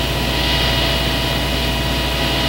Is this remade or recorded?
recorded